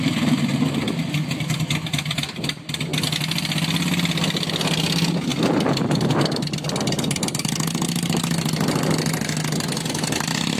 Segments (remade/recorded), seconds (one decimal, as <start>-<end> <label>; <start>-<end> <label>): 0.0-10.6 recorded